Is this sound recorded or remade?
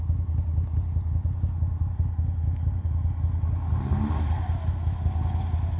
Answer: recorded